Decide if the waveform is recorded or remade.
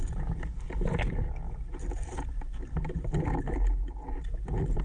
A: recorded